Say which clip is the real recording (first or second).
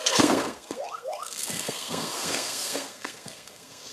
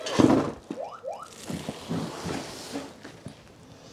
second